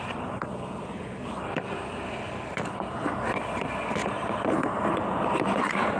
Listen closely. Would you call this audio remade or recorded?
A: recorded